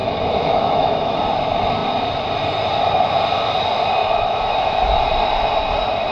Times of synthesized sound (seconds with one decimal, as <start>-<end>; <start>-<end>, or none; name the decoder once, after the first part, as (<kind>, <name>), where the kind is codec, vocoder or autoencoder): 0.0-1.2 (autoencoder, DAC-VAE); 4.0-5.0